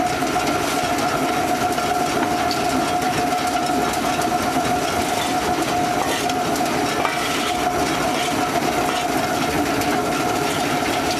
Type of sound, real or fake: real